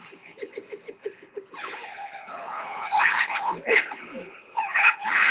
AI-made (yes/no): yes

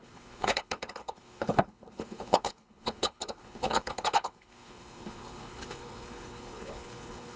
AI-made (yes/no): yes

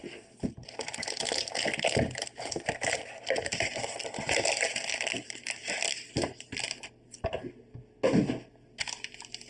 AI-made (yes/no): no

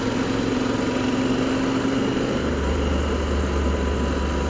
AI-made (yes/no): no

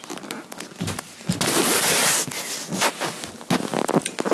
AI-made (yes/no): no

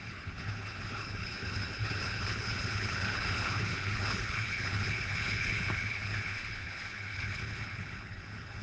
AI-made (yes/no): yes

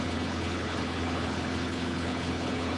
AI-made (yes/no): yes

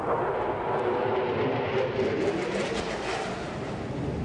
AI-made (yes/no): no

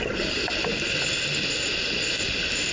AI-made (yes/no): no